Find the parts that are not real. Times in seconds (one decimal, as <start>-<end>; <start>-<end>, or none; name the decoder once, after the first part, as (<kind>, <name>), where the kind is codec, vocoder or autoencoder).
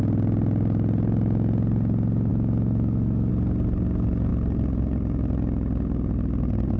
2.3-3.3 (autoencoder, DAC-VAE)